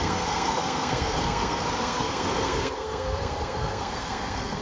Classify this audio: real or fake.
fake